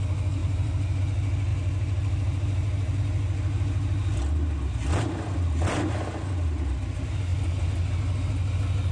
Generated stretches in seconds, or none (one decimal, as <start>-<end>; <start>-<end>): 0.4-1.0; 1.5-3.0